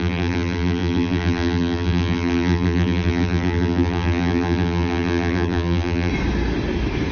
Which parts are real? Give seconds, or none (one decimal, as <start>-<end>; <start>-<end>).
6.1-7.1

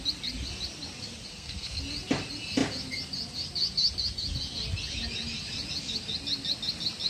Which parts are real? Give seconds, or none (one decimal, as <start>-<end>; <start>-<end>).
0.0-1.3; 1.8-7.1